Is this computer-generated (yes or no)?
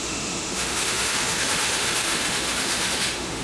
yes